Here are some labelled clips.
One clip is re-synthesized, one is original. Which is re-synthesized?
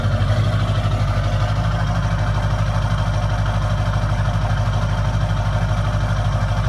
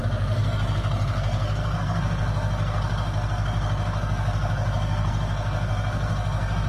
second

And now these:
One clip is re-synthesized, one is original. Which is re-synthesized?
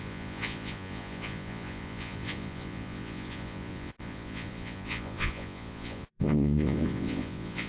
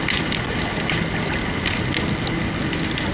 first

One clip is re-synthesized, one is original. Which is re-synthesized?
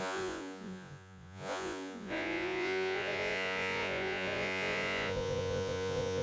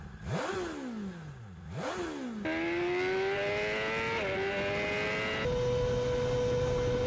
first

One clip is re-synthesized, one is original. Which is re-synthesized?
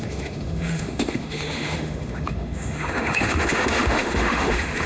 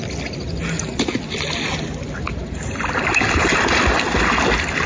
first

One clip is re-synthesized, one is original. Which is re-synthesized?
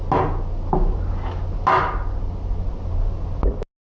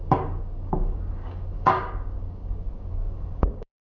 second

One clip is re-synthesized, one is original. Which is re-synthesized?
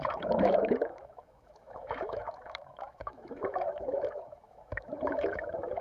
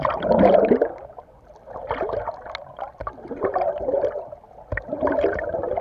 first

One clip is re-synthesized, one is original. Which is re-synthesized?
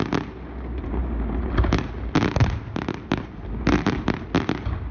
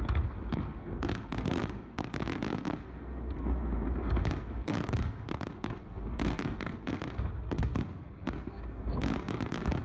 second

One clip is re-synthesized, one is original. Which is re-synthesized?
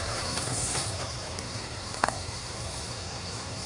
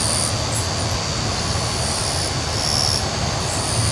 first